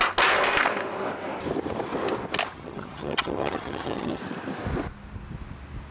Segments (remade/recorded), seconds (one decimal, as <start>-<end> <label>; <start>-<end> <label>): 0.0-2.5 recorded; 2.5-4.2 remade; 4.2-5.9 recorded